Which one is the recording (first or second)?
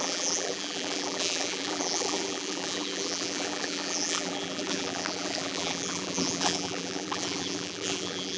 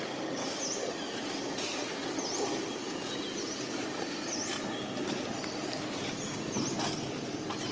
second